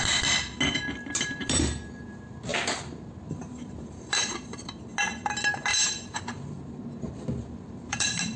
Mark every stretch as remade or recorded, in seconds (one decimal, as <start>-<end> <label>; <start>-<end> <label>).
0.0-2.5 recorded; 2.5-4.8 remade; 4.8-5.7 recorded; 5.7-6.8 remade; 6.8-7.4 recorded; 7.4-8.4 remade

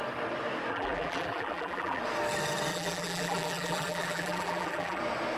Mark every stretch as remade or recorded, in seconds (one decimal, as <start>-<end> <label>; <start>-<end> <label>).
0.0-0.7 recorded; 0.7-2.0 remade; 2.0-2.7 recorded; 2.7-5.0 remade; 5.0-5.4 recorded